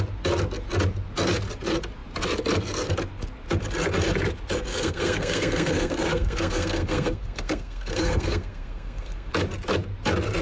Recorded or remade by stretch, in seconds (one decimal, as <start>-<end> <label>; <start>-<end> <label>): 0.0-4.7 recorded; 4.7-9.3 remade; 9.3-10.4 recorded